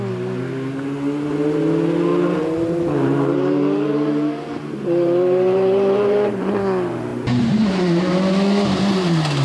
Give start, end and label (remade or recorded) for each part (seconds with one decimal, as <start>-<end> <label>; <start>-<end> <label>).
0.0-2.1 recorded; 2.1-6.5 remade; 6.5-7.1 recorded; 7.1-8.1 remade; 8.1-9.4 recorded